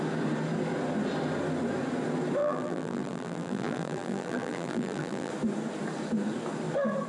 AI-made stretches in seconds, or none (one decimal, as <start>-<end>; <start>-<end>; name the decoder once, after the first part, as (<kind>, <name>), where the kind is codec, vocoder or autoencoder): 2.4-5.3 (vocoder, BigVGAN v2)